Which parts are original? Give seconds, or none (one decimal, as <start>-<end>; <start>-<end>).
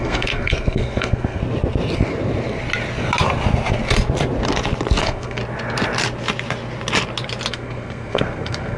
1.4-5.0; 5.4-7.5